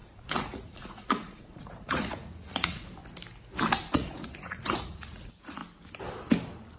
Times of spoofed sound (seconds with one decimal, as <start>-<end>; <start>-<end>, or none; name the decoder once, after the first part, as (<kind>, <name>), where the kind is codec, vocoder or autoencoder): 0.0-3.0 (vocoder, Vocos); 3.9-5.6